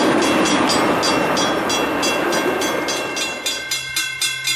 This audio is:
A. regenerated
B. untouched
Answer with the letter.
B